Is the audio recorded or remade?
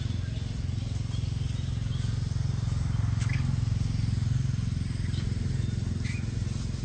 recorded